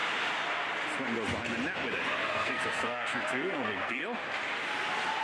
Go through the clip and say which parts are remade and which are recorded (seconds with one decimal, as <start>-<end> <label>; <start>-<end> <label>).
0.0-2.2 recorded; 2.2-4.0 remade; 4.0-5.2 recorded